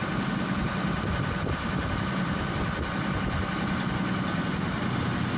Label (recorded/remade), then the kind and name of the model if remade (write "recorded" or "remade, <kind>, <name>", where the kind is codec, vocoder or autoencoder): recorded